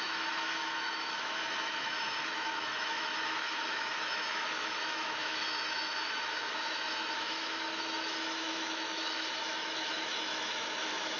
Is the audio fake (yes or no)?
yes